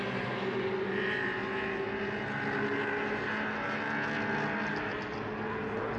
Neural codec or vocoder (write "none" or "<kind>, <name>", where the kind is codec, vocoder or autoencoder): none